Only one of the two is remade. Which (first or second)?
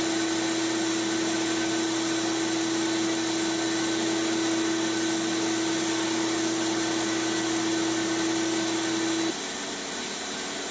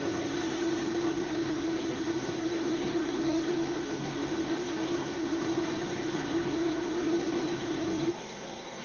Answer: second